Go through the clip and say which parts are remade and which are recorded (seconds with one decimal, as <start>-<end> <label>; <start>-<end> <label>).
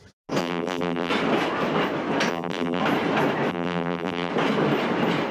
0.0-0.4 recorded; 0.4-1.1 remade; 1.1-2.3 recorded; 2.3-2.8 remade; 2.8-3.5 recorded; 3.5-4.3 remade; 4.3-5.3 recorded